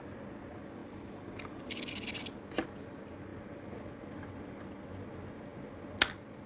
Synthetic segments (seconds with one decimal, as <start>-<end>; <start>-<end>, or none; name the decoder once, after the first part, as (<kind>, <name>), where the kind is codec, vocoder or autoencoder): none